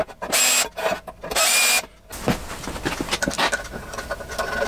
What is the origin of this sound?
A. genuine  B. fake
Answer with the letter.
A